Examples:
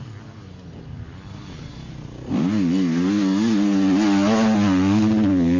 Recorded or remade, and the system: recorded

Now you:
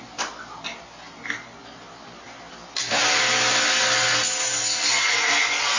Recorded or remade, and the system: recorded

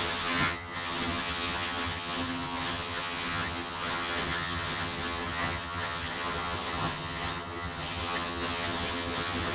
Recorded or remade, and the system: remade, vocoder, HiFi-GAN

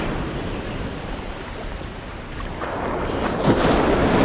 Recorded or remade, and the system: recorded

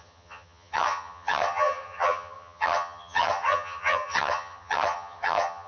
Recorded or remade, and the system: remade, vocoder, HiFi-GAN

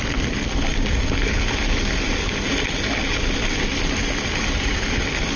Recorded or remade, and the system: recorded